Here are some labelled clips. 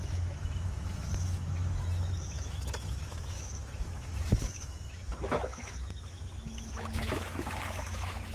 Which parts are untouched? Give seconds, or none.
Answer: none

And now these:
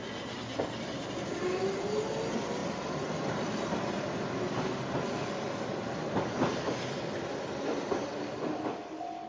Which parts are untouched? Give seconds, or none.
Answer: 0.0-9.3

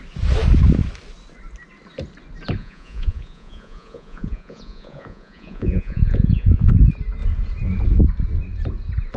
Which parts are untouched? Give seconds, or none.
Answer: 0.0-2.6; 6.7-9.2

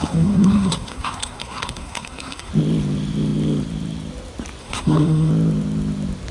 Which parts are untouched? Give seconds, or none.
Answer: 2.5-4.6; 5.3-6.3